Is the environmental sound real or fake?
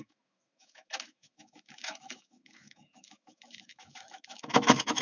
fake